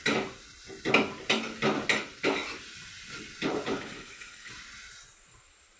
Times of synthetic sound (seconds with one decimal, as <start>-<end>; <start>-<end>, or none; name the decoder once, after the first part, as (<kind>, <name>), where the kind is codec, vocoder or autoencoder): 3.7-4.5 (codec, HILCodec)